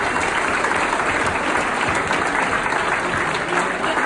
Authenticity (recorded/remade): recorded